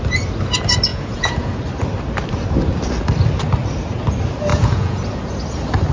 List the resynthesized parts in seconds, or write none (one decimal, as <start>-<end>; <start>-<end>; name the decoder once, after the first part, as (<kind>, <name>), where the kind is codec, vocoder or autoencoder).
0.9-1.6 (vocoder, Vocos); 4.5-5.0